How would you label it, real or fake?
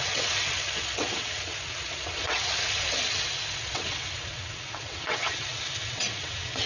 fake